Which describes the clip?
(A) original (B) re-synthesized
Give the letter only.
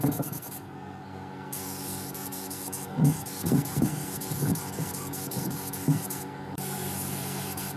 B